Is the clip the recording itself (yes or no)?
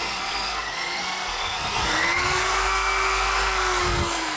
no